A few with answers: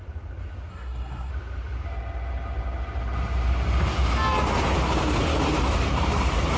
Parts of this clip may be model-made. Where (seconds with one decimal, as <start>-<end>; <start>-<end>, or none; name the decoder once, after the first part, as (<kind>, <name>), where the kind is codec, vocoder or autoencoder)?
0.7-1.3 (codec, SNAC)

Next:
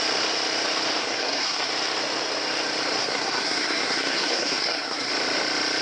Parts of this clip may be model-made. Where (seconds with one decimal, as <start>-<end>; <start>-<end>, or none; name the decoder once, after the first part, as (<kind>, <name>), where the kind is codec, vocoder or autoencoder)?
1.0-1.7 (codec, SNAC); 3.0-5.1

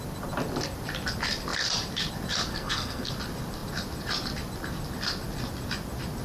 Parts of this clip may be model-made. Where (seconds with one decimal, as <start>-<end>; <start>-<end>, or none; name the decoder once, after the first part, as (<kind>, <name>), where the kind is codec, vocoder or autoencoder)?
2.5-3.1 (codec, SNAC)